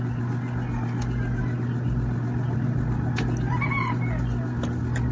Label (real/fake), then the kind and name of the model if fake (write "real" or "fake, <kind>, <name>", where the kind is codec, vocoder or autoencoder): real